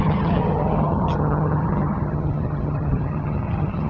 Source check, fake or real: fake